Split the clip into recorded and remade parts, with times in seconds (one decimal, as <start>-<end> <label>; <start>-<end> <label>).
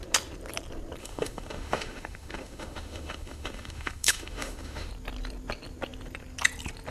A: 0.0-1.0 recorded; 1.0-4.9 remade; 4.9-6.9 recorded